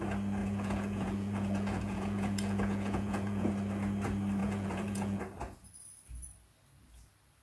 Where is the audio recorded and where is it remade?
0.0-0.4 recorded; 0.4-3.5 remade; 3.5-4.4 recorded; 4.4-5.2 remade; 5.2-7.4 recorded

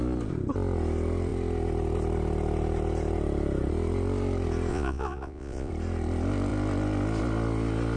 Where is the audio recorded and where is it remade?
0.0-4.7 recorded; 4.7-5.7 remade; 5.7-8.0 recorded

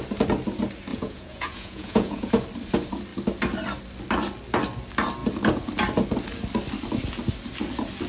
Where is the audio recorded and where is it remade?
0.0-0.9 recorded; 0.9-2.3 remade; 2.3-8.1 recorded